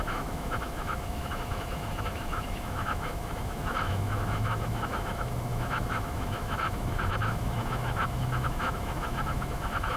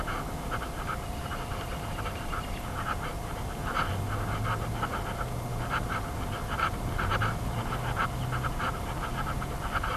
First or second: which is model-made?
first